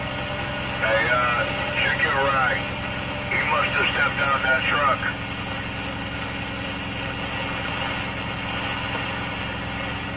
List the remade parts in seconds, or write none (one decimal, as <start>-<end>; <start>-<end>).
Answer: none